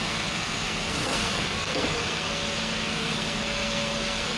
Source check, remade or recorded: remade